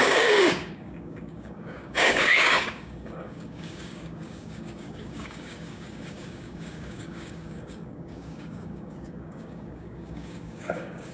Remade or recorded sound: remade